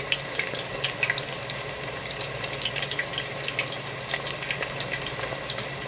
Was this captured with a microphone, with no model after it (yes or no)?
yes